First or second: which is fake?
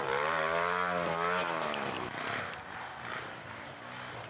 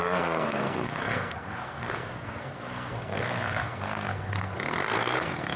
second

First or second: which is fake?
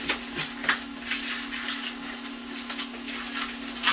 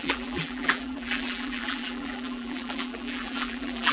second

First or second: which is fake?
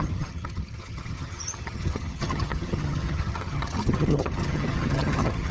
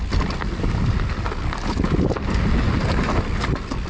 first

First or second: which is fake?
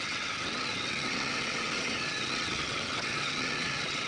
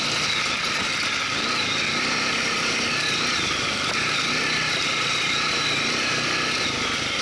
first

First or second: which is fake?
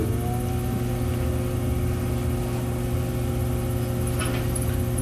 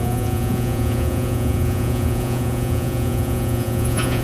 second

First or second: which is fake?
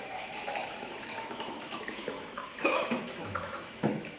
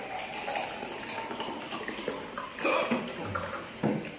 first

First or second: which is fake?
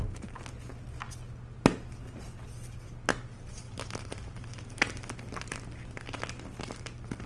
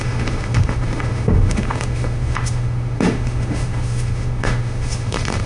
second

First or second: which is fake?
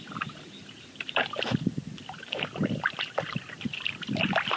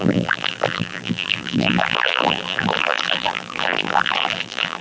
second